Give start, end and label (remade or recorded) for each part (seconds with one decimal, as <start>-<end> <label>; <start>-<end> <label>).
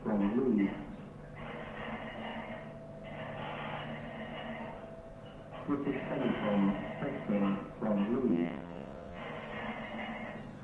0.0-8.3 recorded; 8.3-9.2 remade; 9.2-10.6 recorded